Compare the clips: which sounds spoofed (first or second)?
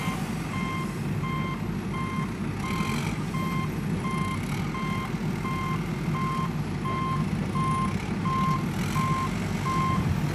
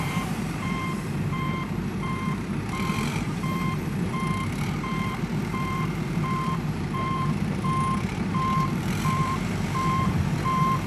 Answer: second